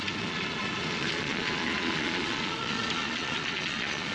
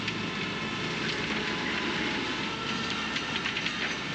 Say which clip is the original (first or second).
second